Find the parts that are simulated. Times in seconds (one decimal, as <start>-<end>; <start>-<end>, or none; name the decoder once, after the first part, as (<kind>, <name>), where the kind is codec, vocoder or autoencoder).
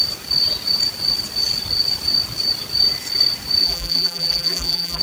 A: 3.6-5.0 (vocoder, BigVGAN v2)